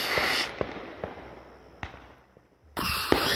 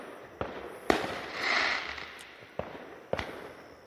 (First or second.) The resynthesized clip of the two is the second